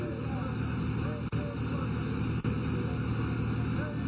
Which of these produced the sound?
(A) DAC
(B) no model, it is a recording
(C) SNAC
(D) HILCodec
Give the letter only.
B